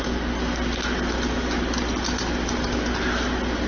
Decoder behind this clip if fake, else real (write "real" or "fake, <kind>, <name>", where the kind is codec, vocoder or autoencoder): real